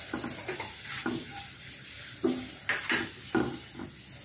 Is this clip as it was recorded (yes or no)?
yes